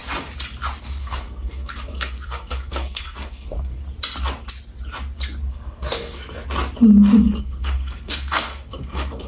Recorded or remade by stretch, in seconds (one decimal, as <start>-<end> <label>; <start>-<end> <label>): 0.0-0.8 recorded; 0.8-3.8 remade; 3.8-5.5 recorded; 5.5-6.2 remade; 6.2-7.4 recorded; 7.4-9.3 remade